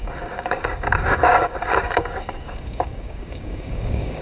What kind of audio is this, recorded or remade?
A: remade